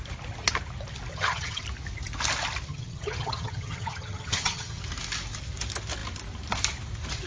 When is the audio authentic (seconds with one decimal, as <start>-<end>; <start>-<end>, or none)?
0.0-1.1; 1.6-2.7; 4.8-7.3